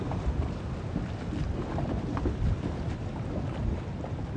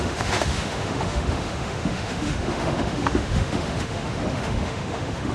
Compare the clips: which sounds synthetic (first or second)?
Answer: second